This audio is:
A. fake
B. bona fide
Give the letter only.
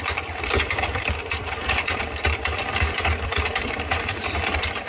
A